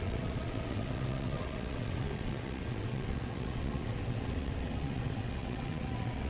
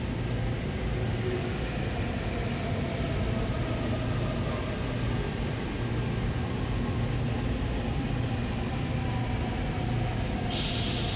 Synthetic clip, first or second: first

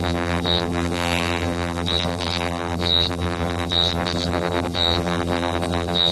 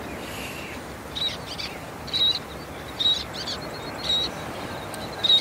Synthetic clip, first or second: first